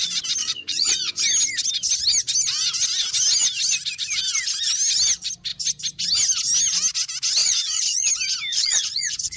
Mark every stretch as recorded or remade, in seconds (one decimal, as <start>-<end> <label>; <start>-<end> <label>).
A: 0.0-0.4 recorded; 0.4-1.1 remade; 1.1-7.4 recorded; 7.4-8.1 remade; 8.1-8.5 recorded; 8.5-9.4 remade